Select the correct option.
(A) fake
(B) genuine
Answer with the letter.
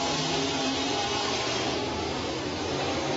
B